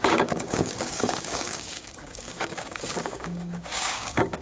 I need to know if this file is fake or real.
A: fake